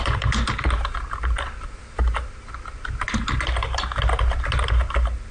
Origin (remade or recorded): recorded